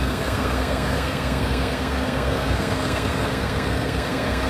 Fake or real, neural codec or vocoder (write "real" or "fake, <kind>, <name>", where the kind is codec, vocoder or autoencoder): fake, codec, SNAC